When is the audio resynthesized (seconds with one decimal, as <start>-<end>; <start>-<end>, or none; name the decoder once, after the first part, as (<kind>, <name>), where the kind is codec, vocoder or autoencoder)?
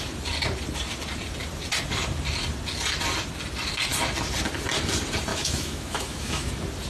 5.3-6.5 (autoencoder, DAC-VAE)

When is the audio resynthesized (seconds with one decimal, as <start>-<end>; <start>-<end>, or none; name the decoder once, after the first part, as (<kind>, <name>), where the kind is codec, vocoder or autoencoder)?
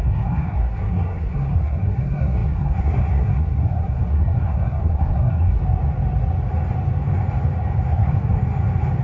0.0-5.6 (codec, SNAC); 7.9-8.4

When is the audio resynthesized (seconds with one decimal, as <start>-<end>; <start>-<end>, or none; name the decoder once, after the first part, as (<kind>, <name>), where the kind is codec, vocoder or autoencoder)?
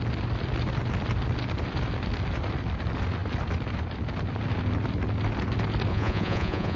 5.9-6.8 (vocoder, Vocos)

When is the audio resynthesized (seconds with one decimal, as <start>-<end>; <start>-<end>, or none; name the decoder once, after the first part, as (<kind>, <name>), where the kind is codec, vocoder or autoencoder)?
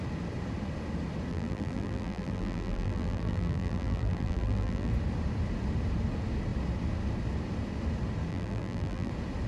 1.3-4.9 (vocoder, BigVGAN v2); 8.3-9.1